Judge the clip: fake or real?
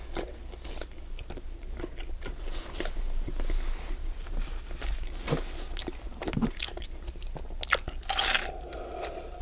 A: real